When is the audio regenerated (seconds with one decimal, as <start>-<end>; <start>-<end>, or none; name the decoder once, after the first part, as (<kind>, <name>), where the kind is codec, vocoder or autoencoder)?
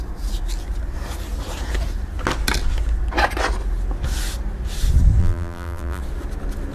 5.2-6.0 (vocoder, BigVGAN v2)